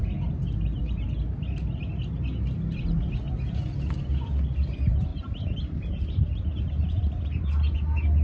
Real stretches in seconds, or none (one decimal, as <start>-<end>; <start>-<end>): 0.0-5.1; 7.0-8.2